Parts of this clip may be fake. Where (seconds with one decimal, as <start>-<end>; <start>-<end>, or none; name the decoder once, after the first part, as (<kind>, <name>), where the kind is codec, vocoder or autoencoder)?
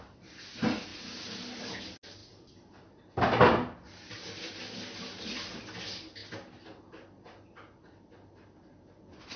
none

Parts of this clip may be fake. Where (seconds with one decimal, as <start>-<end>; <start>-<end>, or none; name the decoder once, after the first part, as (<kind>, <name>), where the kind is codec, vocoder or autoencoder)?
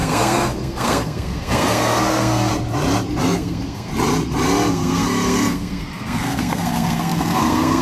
0.0-2.5 (codec, SNAC); 3.2-3.9; 4.7-7.8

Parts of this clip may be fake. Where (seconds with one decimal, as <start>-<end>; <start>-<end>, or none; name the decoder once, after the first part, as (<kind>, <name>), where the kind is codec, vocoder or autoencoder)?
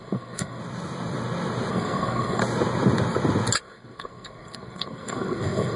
0.0-0.6 (codec, SNAC); 1.7-2.4; 3.6-5.8